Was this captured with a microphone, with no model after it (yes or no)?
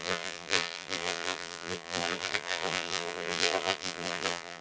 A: no